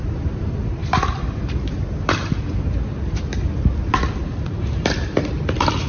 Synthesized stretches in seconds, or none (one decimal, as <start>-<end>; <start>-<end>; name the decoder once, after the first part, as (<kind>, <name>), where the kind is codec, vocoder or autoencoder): 0.8-2.8 (vocoder, BigVGAN v2); 4.2-4.9